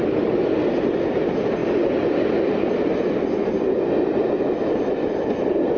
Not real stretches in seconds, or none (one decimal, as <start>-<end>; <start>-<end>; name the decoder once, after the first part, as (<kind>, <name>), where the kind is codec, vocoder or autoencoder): none